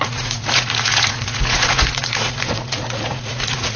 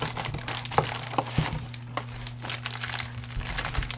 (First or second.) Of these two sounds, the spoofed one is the first